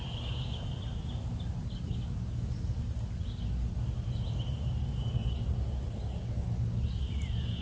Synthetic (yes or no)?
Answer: no